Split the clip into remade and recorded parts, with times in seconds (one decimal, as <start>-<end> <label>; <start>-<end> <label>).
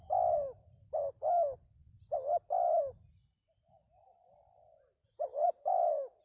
0.0-5.0 recorded; 5.0-6.2 remade